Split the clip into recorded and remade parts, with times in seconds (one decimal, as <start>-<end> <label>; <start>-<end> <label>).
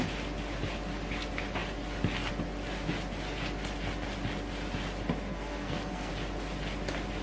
0.0-5.3 recorded; 5.3-6.1 remade; 6.1-7.2 recorded